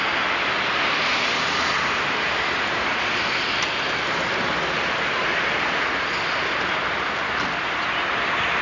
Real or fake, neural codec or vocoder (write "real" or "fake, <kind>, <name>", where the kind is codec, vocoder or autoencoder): real